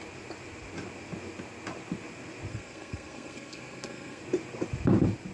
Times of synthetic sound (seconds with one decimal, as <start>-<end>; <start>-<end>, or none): 2.5-4.2